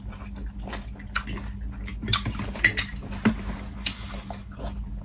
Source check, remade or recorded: recorded